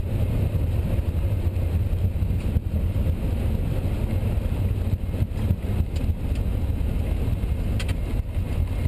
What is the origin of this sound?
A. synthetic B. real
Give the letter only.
B